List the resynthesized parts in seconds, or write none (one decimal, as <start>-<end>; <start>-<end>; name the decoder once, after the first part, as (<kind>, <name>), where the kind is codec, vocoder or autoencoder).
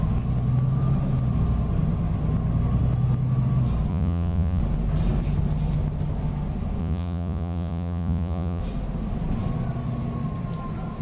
3.9-4.6 (vocoder, Vocos); 6.8-8.6